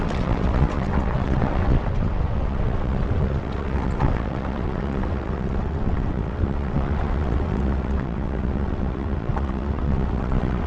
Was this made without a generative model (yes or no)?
no